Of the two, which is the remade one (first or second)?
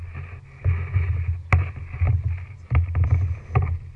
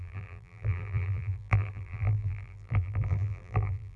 second